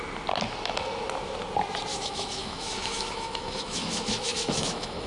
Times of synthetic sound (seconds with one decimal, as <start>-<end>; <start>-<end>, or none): 1.9-5.1